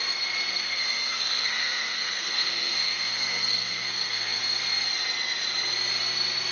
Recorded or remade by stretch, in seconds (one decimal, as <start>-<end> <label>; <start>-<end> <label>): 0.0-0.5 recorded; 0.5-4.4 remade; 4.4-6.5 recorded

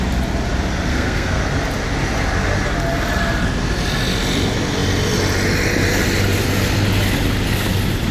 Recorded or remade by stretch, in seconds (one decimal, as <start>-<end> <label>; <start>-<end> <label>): 0.0-0.9 recorded; 0.9-1.4 remade; 1.4-8.1 recorded

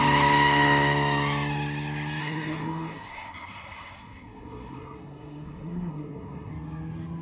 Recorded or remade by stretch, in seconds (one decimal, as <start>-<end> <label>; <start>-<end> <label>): 0.0-2.2 recorded; 2.2-6.5 remade; 6.5-7.2 recorded

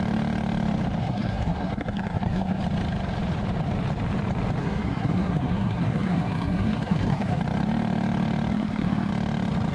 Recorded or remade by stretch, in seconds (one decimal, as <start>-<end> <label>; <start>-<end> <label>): 0.0-1.0 recorded; 1.0-2.6 remade; 2.6-4.6 recorded; 4.6-7.4 remade; 7.4-8.5 recorded; 8.5-9.1 remade; 9.1-9.7 recorded